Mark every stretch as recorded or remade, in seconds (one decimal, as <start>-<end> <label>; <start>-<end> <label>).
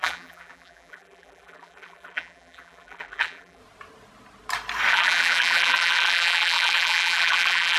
0.0-3.6 remade; 3.6-4.9 recorded; 4.9-7.8 remade